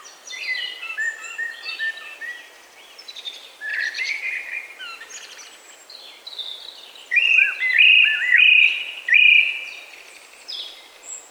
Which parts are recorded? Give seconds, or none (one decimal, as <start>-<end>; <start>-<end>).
0.0-3.7; 4.5-11.3